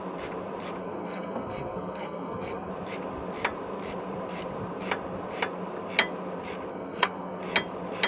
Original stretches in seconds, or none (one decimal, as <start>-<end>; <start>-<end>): 0.0-0.8; 2.7-6.7; 7.4-8.1